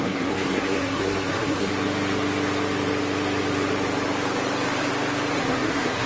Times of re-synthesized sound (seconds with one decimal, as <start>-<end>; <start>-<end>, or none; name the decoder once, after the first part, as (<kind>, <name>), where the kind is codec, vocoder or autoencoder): 0.0-1.7 (codec, SNAC); 5.4-6.1